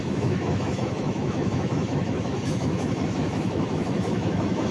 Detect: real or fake fake